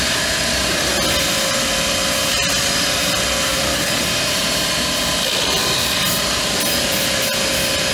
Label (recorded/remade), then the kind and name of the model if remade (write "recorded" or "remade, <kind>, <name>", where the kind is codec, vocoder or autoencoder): recorded